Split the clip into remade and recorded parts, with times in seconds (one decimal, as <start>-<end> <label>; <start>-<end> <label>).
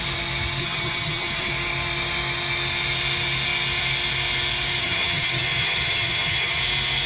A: 0.0-0.6 recorded; 0.6-1.5 remade; 1.5-4.8 recorded; 4.8-6.6 remade; 6.6-7.1 recorded